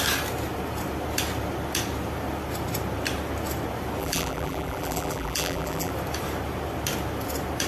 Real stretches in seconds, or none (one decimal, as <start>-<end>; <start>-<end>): 0.0-4.0; 5.9-7.7